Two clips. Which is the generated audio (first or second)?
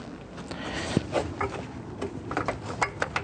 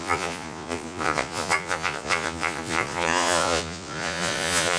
second